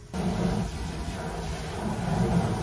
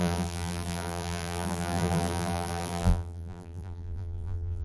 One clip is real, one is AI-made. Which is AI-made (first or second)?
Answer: second